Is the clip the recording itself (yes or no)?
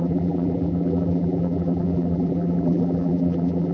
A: no